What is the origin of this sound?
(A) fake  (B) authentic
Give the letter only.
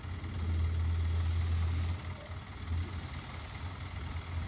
B